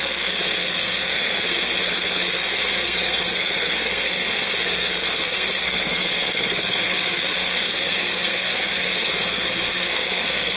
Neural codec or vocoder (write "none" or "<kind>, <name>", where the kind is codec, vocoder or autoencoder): codec, SNAC